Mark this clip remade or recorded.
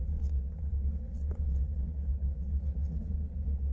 remade